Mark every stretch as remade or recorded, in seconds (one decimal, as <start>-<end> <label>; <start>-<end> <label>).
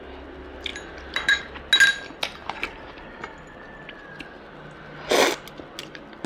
0.0-0.7 recorded; 0.7-1.4 remade; 1.4-6.3 recorded